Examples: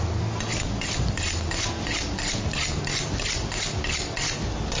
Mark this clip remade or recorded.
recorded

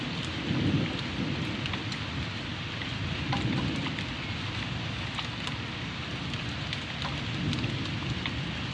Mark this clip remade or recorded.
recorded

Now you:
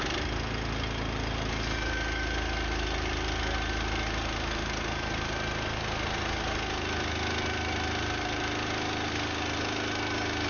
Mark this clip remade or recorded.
recorded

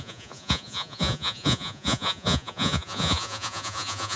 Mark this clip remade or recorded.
remade